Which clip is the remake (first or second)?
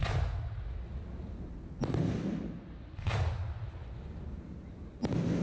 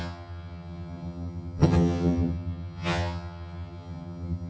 second